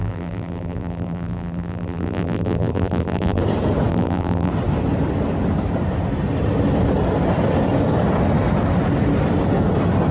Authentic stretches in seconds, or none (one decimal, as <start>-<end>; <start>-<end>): 3.4-3.9; 4.5-10.1